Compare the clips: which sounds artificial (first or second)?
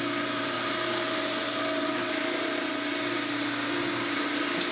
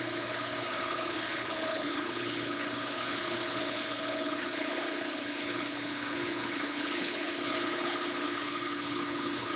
second